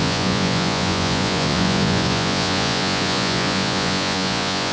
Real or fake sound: fake